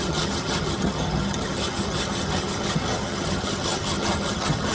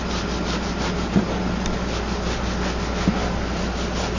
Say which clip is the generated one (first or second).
first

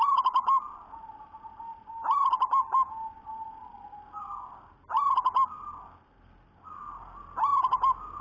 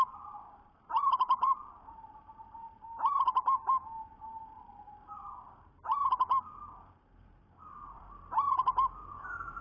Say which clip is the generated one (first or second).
second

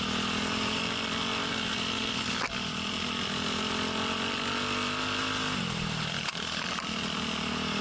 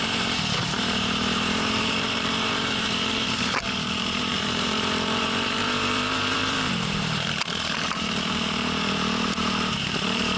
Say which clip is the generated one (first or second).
second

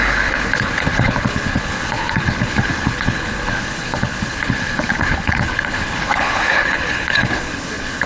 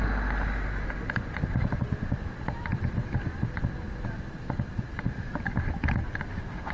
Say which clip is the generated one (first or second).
first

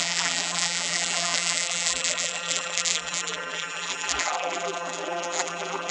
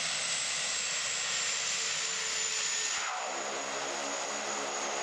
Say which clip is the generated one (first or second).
first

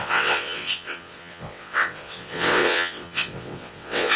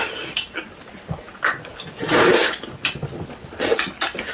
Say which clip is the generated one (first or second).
first